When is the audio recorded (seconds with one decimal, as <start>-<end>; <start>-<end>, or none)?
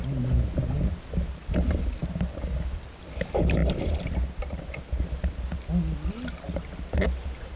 0.0-7.6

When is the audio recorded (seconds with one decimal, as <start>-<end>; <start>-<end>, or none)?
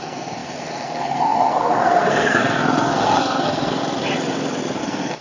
3.8-4.8